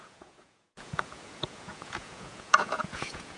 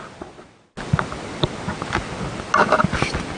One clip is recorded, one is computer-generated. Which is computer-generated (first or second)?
first